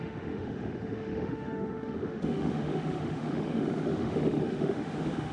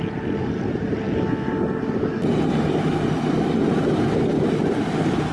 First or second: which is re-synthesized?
first